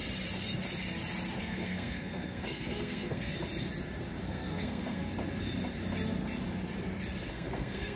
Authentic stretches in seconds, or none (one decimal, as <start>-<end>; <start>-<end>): 0.0-1.4; 3.3-4.2; 5.0-7.3